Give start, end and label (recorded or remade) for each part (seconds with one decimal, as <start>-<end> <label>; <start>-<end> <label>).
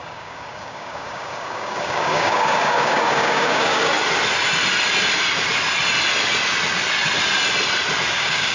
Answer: 0.0-3.9 remade; 3.9-8.1 recorded; 8.1-8.5 remade